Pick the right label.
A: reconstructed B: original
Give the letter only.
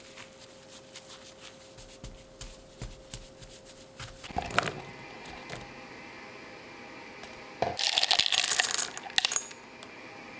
B